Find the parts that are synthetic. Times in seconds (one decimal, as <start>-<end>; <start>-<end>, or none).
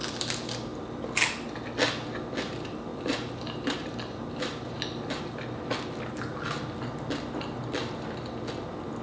2.9-5.3